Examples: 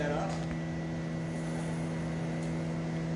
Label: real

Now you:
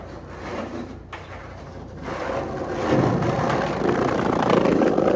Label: real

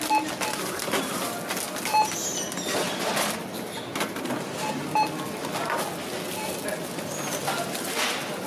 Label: real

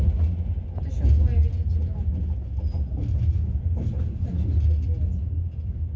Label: real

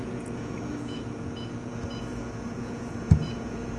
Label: fake